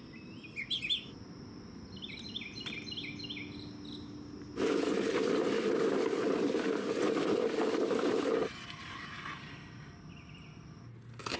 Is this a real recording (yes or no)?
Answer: yes